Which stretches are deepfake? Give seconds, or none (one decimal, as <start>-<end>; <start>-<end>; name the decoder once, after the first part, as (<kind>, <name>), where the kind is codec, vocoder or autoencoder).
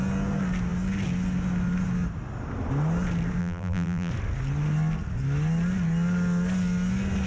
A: 3.4-4.1 (vocoder, BigVGAN v2)